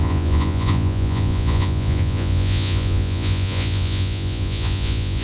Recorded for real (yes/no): no